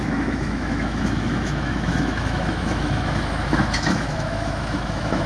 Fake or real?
fake